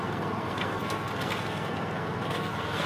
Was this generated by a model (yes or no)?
yes